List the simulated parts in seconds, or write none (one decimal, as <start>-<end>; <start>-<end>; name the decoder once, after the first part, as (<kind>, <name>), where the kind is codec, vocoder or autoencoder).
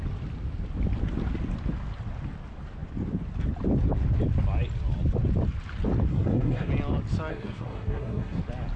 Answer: 6.1-6.7 (codec, SNAC); 7.3-8.4